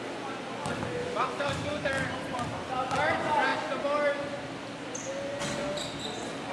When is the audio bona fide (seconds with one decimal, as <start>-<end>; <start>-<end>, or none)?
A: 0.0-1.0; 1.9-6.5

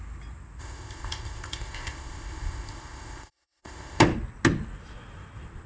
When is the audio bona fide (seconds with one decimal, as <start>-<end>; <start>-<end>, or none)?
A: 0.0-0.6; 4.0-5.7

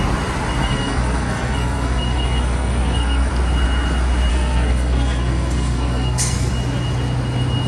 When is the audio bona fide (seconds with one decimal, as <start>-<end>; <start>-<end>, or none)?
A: 0.0-0.6; 3.3-4.3; 6.5-7.7